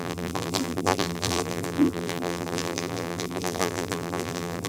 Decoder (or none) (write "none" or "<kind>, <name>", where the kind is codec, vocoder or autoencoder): vocoder, BigVGAN v2